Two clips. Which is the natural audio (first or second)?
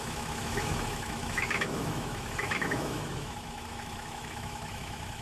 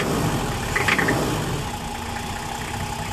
second